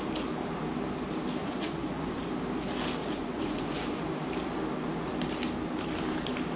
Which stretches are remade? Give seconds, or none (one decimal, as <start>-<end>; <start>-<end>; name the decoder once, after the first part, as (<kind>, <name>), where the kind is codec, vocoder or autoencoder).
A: 1.4-2.2 (vocoder, Vocos); 3.0-4.0

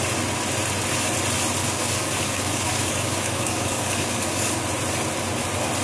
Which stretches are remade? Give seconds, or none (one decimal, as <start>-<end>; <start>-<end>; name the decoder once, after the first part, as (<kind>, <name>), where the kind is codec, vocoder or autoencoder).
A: 1.6-4.5 (codec, DAC)

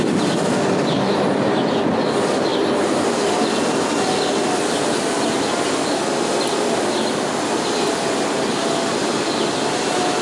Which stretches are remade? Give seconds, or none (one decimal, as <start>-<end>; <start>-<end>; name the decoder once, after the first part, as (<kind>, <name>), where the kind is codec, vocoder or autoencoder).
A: none